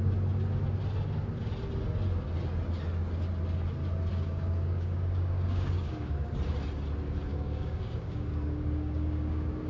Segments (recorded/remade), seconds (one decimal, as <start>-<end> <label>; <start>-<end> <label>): 0.0-4.1 recorded; 4.1-6.3 remade; 6.3-7.3 recorded; 7.3-9.7 remade